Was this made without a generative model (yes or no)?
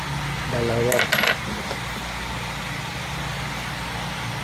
yes